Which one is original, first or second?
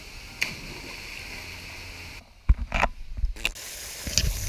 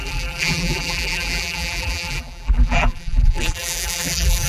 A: first